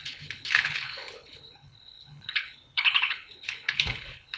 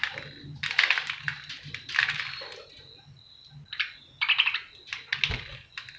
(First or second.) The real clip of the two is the second